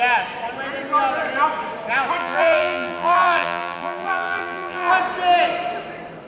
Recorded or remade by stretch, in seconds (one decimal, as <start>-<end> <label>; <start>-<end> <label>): 0.0-2.2 recorded; 2.2-4.9 remade; 4.9-6.3 recorded